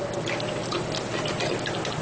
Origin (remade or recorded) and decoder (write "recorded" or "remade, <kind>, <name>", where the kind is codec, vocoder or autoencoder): recorded